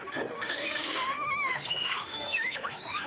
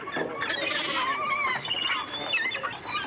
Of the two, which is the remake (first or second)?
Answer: first